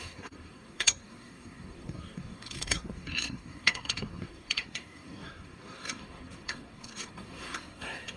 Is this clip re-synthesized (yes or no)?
yes